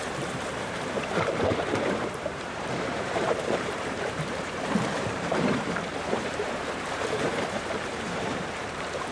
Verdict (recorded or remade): remade